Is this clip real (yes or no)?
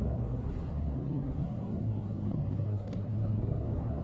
no